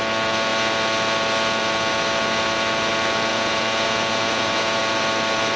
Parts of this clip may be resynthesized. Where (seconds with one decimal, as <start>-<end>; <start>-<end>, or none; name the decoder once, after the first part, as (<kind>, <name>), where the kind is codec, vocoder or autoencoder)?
3.3-4.8 (vocoder, Vocos)